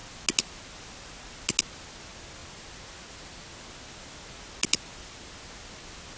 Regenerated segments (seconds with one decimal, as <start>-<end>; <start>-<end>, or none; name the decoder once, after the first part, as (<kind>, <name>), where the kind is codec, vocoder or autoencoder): none